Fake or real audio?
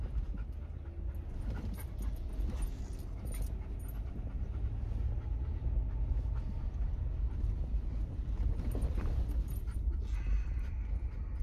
real